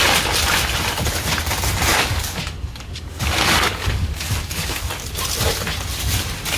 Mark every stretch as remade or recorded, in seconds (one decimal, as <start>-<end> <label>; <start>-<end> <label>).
0.0-1.9 recorded; 1.9-4.9 remade; 4.9-6.6 recorded